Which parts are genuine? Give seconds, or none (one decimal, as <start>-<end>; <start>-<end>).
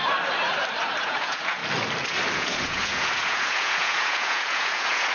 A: 0.0-1.0; 1.6-2.3